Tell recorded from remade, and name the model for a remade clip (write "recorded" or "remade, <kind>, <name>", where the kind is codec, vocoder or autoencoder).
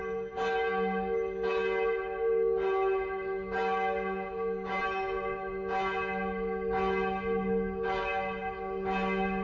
recorded